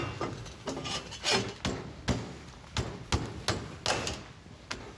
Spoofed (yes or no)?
no